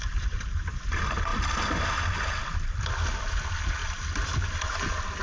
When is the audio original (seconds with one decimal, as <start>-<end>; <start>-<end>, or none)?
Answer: 0.0-1.3; 1.8-3.8; 4.4-5.2